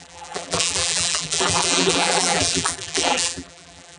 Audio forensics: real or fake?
fake